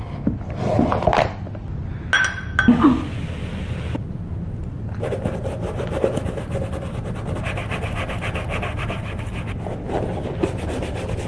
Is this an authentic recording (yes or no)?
yes